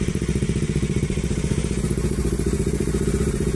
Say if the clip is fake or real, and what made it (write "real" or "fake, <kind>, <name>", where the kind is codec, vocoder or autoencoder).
fake, vocoder, Vocos